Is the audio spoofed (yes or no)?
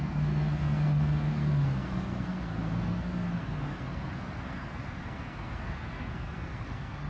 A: yes